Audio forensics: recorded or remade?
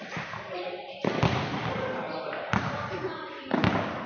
recorded